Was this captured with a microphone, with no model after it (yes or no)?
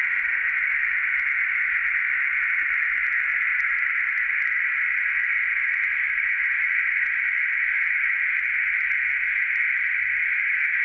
yes